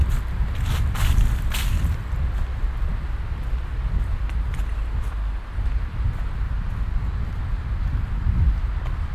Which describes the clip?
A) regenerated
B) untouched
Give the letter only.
B